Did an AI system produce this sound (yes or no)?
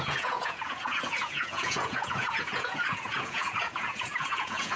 yes